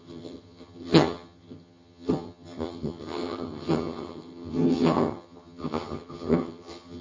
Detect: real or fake fake